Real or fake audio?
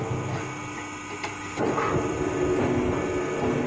real